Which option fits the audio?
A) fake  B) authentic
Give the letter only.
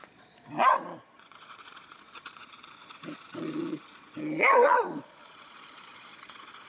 A